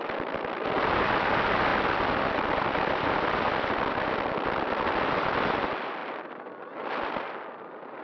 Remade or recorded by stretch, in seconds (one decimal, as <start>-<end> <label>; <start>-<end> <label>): 0.0-1.7 recorded; 1.7-3.9 remade; 3.9-6.0 recorded; 6.0-7.4 remade; 7.4-8.0 recorded